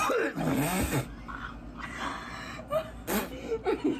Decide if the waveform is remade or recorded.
recorded